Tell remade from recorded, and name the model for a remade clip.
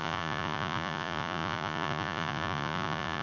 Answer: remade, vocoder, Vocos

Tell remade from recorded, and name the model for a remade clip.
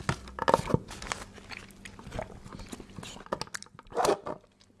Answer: recorded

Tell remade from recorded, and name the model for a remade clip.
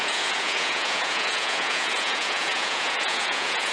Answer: remade, vocoder, Vocos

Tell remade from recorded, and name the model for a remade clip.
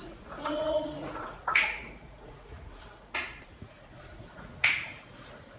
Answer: remade, vocoder, Vocos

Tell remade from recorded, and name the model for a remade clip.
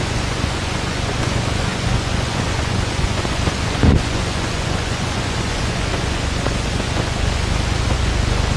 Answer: remade, vocoder, Vocos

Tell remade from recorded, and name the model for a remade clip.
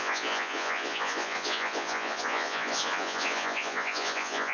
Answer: remade, vocoder, Vocos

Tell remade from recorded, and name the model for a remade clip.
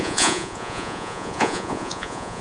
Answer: remade, vocoder, Vocos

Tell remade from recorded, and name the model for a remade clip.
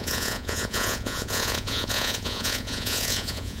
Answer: remade, vocoder, Vocos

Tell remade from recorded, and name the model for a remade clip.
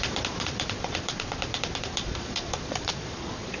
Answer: remade, vocoder, Vocos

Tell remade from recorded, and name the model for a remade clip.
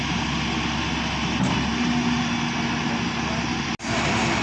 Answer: recorded